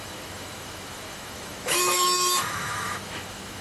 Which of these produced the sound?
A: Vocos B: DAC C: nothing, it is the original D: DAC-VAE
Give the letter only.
D